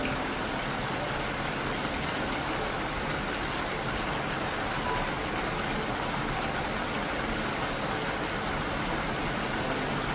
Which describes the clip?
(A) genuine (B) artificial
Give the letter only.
A